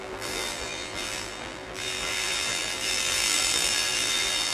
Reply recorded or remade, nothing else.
remade